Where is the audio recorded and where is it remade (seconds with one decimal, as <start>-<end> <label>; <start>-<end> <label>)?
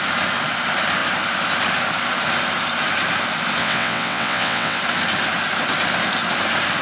0.0-3.6 recorded; 3.6-4.8 remade; 4.8-6.8 recorded